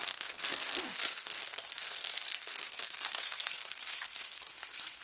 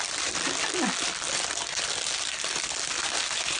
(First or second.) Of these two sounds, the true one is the second